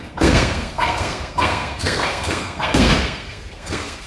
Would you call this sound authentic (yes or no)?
no